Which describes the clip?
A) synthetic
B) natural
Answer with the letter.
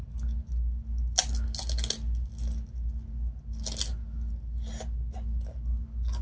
B